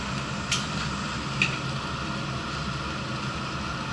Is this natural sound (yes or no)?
yes